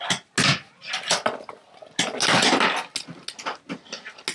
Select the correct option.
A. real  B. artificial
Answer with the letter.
A